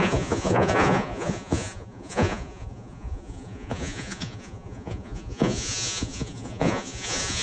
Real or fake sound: fake